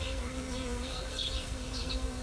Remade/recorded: remade